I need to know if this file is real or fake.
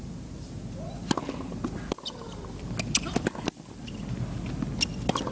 real